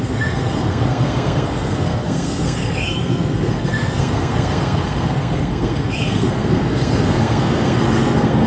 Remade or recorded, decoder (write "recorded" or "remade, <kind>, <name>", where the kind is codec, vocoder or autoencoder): remade, codec, SNAC